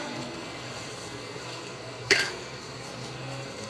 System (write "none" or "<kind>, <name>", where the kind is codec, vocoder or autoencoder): codec, SNAC